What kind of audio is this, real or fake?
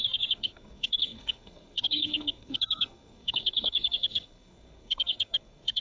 fake